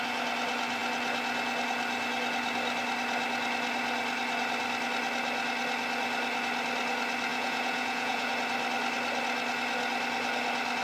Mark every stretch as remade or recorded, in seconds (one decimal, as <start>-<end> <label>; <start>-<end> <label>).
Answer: 0.0-7.3 recorded; 7.3-8.3 remade; 8.3-10.8 recorded